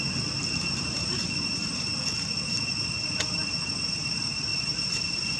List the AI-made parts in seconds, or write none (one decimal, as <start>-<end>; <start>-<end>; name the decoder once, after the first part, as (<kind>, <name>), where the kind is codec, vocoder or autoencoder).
none